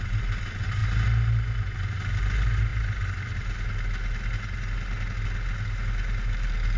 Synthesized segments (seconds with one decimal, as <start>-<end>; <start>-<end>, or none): none